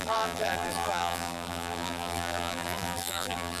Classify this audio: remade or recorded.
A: remade